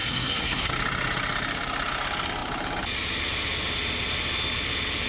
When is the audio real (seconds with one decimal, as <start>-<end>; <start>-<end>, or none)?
0.7-5.1